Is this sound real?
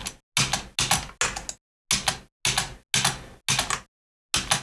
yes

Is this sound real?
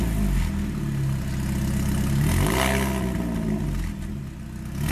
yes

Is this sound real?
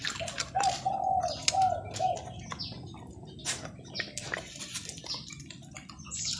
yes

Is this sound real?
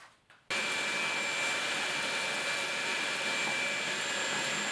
yes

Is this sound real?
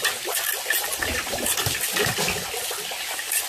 yes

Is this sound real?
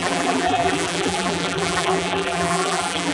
no